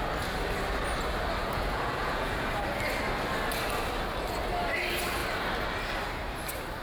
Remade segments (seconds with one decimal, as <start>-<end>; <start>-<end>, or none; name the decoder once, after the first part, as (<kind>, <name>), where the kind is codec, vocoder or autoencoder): 1.4-2.5 (vocoder, Vocos)